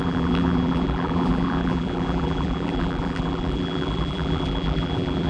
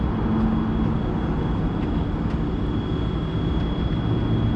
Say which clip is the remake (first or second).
first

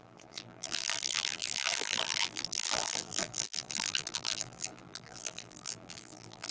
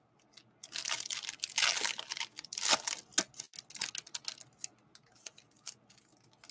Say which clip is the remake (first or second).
first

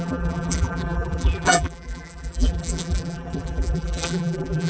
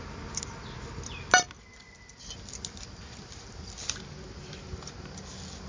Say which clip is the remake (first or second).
first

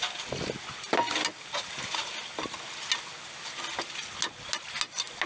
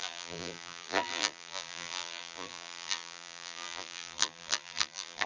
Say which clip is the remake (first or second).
second